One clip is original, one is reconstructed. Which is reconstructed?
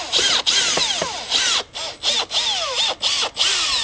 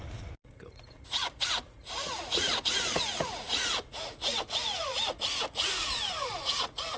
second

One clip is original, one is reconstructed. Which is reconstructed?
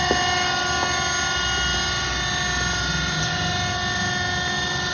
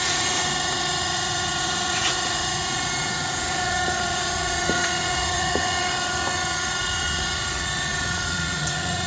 second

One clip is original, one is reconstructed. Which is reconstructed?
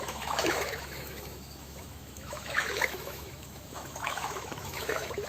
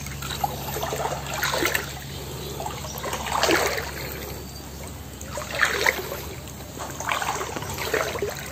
first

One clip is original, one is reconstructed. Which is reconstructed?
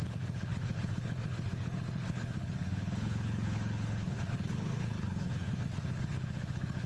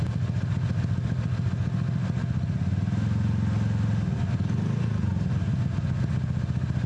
first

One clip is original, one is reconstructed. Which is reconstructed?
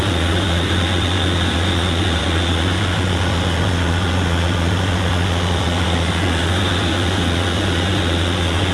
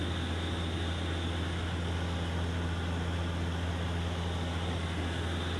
first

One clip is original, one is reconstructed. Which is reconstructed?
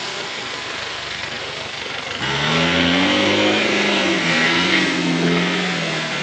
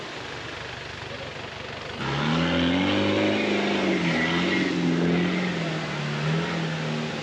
first